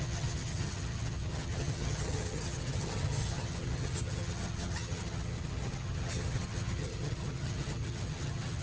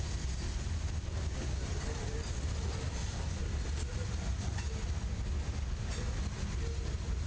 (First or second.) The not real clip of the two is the first